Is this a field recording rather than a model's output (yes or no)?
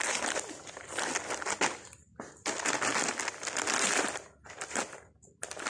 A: yes